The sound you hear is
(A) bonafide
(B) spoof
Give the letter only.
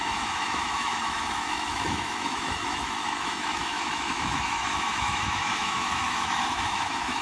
B